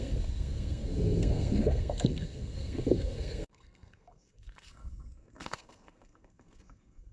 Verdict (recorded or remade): remade